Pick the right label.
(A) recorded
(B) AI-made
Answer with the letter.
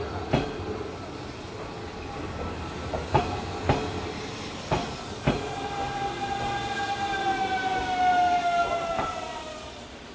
A